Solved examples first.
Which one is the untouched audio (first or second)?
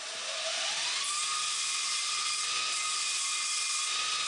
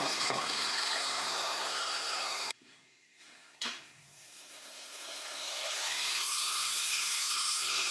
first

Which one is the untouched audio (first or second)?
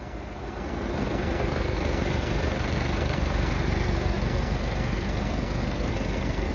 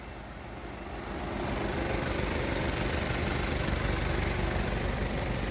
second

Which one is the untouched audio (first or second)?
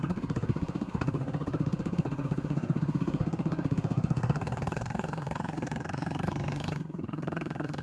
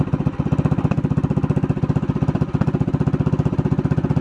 second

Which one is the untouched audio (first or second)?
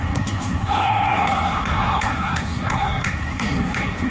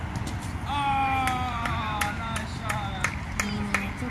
second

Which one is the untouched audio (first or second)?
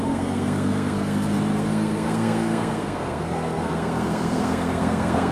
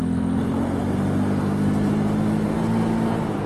second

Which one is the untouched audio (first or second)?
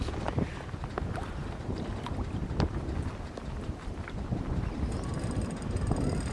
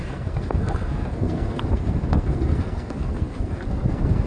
first